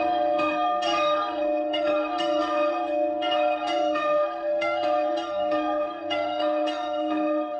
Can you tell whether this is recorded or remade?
remade